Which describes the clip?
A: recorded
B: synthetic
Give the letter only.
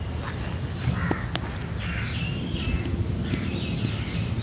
A